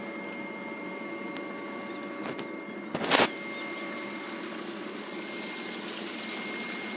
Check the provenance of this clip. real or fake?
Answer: real